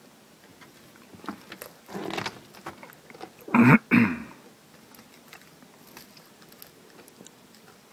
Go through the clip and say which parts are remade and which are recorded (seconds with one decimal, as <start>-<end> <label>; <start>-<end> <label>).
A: 0.0-7.9 recorded